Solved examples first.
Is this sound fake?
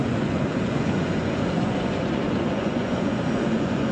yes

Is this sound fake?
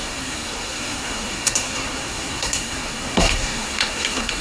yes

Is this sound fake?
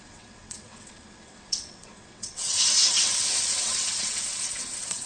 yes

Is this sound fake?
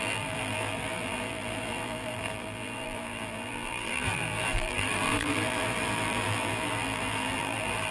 yes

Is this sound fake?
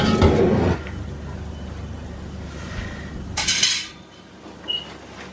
no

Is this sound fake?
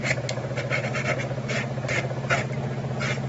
no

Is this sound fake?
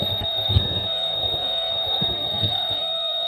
yes